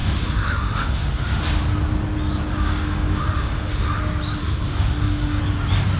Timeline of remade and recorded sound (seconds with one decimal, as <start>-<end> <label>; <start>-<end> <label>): 0.0-1.4 remade; 1.4-2.5 recorded; 2.5-4.0 remade; 4.0-4.4 recorded; 4.4-5.4 remade; 5.4-6.0 recorded